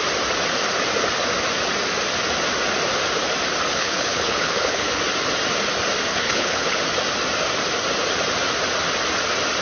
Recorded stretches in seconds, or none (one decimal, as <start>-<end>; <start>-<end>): 0.0-3.7; 5.0-6.1; 6.8-9.6